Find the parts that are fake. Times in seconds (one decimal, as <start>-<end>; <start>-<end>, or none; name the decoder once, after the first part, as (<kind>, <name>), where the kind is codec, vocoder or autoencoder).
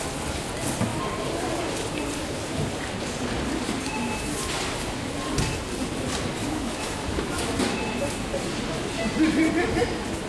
6.4-7.4 (autoencoder, DAC-VAE)